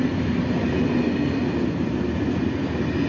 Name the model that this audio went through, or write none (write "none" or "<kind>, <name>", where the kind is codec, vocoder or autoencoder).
none